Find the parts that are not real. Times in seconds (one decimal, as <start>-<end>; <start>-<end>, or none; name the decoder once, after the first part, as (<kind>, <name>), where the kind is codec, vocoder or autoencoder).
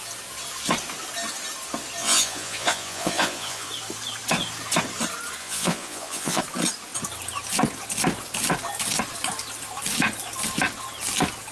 2.0-3.7 (vocoder, Vocos); 5.4-6.4